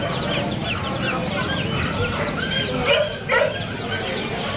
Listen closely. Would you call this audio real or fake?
real